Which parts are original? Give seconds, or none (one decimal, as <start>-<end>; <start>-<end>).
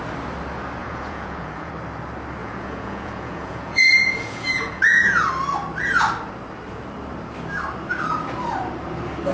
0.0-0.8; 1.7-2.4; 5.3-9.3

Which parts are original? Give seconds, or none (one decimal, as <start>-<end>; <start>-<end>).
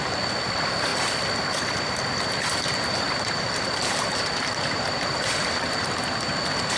0.0-6.8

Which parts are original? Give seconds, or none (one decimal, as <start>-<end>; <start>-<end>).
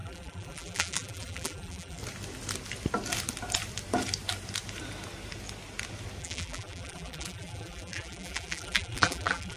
2.0-6.2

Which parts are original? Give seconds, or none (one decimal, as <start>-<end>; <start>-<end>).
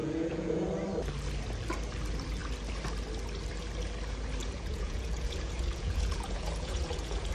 0.7-4.4